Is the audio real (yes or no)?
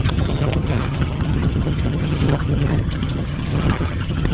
no